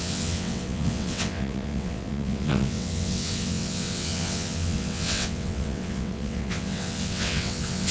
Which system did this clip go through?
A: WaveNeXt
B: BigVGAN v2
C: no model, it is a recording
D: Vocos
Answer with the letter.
A